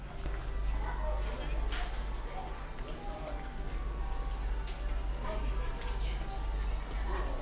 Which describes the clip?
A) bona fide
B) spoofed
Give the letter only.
A